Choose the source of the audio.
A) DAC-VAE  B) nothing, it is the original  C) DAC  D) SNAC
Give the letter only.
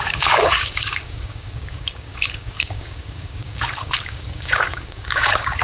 C